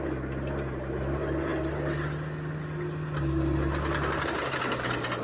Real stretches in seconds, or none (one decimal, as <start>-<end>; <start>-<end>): 0.0-5.2